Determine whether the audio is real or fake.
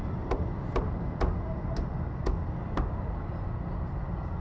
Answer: real